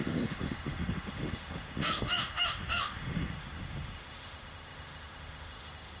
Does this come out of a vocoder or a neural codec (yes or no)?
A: yes